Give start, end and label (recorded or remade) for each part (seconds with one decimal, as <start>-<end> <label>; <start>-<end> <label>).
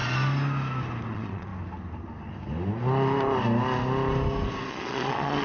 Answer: 0.0-1.1 recorded; 1.1-1.5 remade; 1.5-4.7 recorded; 4.7-5.4 remade